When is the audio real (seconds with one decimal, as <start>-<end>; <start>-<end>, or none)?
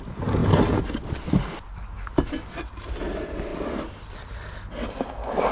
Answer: 0.0-5.5